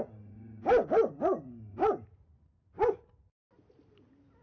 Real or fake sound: real